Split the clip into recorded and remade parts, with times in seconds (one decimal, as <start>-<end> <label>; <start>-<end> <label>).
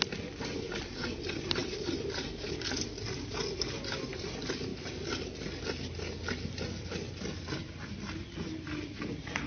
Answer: 0.0-9.5 recorded